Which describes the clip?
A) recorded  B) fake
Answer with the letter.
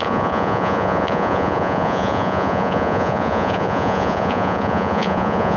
B